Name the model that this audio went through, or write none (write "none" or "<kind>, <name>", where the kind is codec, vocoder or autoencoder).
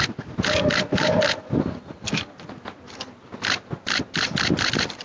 none